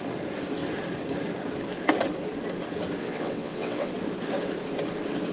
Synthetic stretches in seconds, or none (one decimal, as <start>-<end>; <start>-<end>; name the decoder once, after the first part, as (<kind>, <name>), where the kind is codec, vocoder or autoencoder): 3.0-3.9 (vocoder, WaveNeXt)